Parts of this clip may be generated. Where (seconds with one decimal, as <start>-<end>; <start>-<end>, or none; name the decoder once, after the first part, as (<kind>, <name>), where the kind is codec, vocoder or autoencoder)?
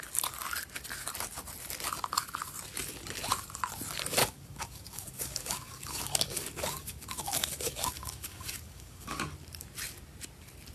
4.2-9.2 (codec, DAC)